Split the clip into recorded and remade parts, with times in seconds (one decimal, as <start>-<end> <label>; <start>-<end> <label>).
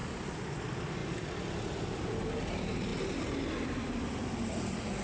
0.0-5.0 recorded